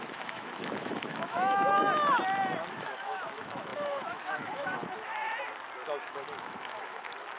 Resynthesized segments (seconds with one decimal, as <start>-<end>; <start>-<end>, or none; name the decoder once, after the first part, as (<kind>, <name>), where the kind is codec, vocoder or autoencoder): 0.0-1.8 (autoencoder, DAC-VAE); 2.7-5.1; 6.0-7.4